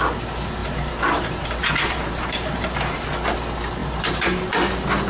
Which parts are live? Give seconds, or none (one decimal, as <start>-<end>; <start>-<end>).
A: 0.0-0.6; 3.1-3.8; 4.5-5.1